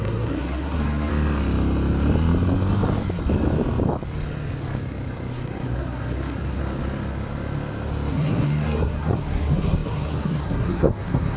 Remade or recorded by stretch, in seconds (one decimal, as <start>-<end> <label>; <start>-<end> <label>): 0.0-1.1 remade; 1.1-5.3 recorded; 5.3-6.6 remade; 6.6-8.1 recorded; 8.1-11.4 remade